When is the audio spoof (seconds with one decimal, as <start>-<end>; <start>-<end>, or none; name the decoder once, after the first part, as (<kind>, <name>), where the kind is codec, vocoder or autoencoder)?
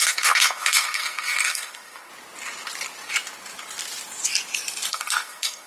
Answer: 0.0-2.1 (codec, SNAC); 4.9-5.7